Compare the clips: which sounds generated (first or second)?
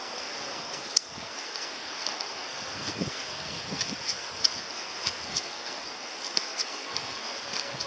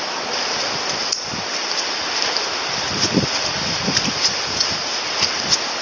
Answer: first